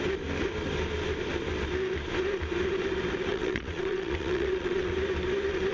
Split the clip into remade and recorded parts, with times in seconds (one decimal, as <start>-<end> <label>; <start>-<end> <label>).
0.0-3.3 recorded; 3.3-4.9 remade; 4.9-5.7 recorded

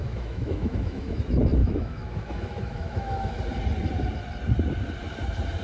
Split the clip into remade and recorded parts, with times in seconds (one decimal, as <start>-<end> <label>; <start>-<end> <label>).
0.0-1.2 remade; 1.2-1.6 recorded; 1.6-3.4 remade; 3.4-5.6 recorded

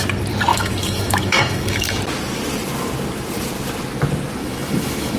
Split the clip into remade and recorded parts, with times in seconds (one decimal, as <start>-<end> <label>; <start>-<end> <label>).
0.0-0.5 recorded; 0.5-2.0 remade; 2.0-4.4 recorded; 4.4-5.2 remade

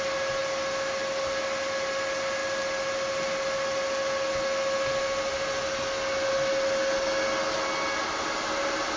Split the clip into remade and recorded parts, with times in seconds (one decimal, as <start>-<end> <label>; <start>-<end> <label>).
0.0-9.0 recorded

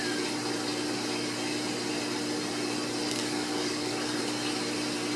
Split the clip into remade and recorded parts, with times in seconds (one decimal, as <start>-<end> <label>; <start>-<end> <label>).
0.0-3.2 recorded; 3.2-4.2 remade; 4.2-5.2 recorded